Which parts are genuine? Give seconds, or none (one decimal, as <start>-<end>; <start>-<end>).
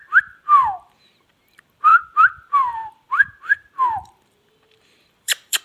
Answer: none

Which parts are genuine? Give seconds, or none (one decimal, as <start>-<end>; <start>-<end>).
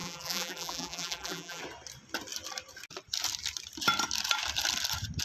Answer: 1.6-5.2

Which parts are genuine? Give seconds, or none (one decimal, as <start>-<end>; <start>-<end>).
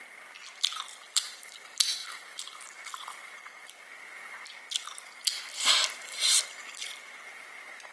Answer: 0.0-2.0; 4.1-7.9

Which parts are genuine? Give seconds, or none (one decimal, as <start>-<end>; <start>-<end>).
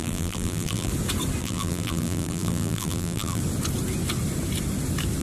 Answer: 0.9-1.4; 3.4-5.2